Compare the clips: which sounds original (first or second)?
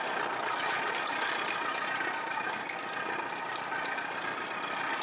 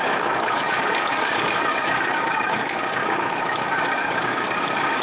first